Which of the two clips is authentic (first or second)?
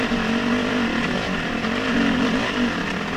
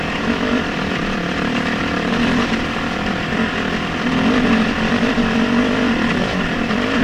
first